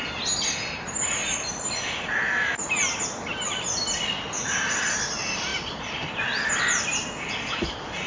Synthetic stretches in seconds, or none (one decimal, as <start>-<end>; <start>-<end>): none